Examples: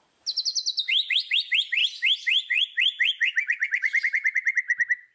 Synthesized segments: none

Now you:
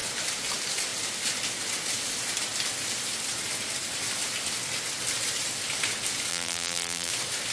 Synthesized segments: 6.3-7.1 (vocoder, BigVGAN v2)

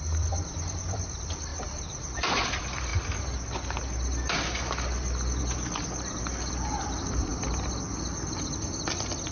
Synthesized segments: 0.0-2.9 (vocoder, BigVGAN v2); 5.4-7.3; 8.5-9.3

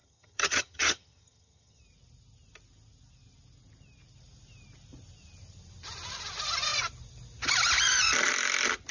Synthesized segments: 0.0-1.8 (vocoder, HiFi-GAN)

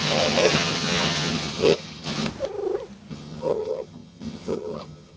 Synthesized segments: 0.0-2.3 (vocoder, HiFi-GAN); 3.1-5.2

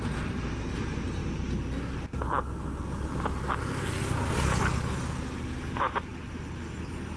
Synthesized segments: none

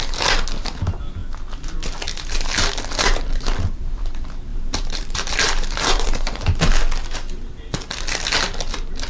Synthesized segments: 4.5-6.8 (vocoder, BigVGAN v2)